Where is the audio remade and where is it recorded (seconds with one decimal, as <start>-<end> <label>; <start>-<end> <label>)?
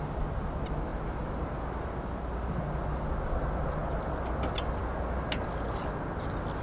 0.0-6.6 recorded